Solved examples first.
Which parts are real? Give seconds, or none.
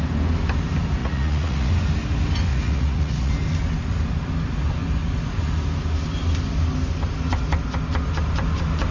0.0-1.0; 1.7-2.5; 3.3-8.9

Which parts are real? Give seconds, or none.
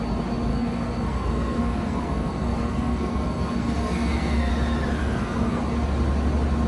0.0-0.5; 4.5-5.0; 5.6-6.7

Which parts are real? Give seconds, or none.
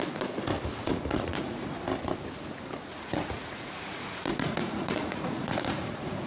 0.0-0.9; 1.7-2.9